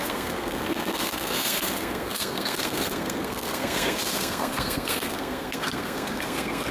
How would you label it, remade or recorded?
remade